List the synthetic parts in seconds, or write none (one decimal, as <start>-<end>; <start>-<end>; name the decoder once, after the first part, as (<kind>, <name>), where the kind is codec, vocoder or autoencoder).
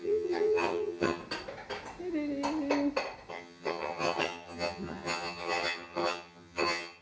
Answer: 0.0-1.2 (vocoder, HiFi-GAN); 3.3-7.0